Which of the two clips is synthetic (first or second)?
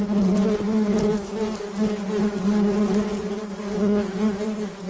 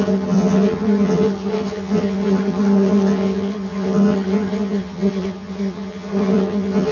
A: second